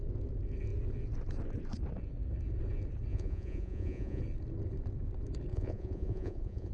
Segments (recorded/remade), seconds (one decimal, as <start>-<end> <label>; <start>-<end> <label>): 0.0-3.1 recorded; 3.1-4.2 remade; 4.2-5.5 recorded; 5.5-6.7 remade